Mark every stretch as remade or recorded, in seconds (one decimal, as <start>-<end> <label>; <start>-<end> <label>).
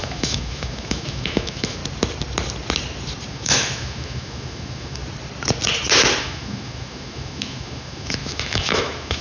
0.0-1.8 remade; 1.8-3.3 recorded; 3.3-5.0 remade; 5.0-6.2 recorded; 6.2-9.2 remade